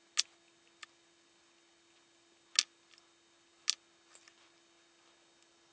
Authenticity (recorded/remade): recorded